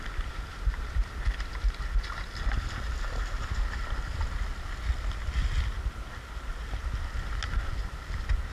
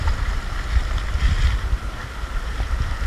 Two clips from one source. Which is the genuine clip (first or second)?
first